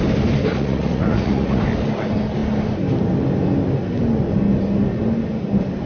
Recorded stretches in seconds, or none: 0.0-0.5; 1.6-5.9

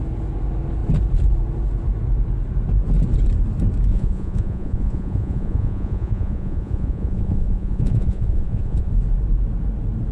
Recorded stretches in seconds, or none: 0.0-3.9; 8.9-10.1

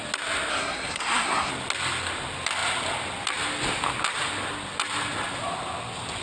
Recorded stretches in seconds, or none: 0.0-0.5; 1.5-6.2

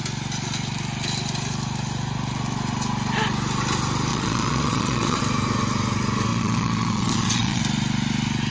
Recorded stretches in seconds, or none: 0.0-4.1; 5.2-6.3; 7.6-8.5

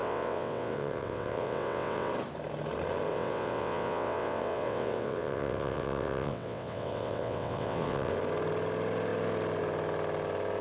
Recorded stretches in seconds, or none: 2.1-3.1; 8.1-10.6

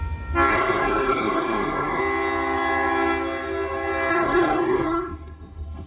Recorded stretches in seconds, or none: 0.0-0.5; 2.0-4.1

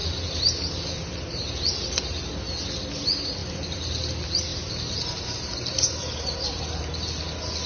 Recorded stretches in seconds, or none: 0.0-3.4; 4.1-4.5; 6.6-7.7

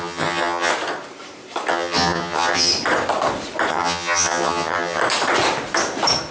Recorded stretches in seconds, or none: 0.7-1.7; 2.7-3.7; 5.0-6.3